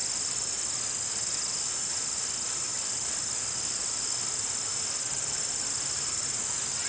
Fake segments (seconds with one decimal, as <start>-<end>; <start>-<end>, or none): none